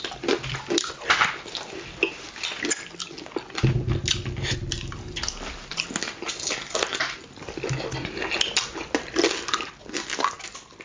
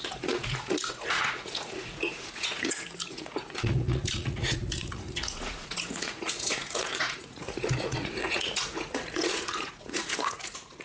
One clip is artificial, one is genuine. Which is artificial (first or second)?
second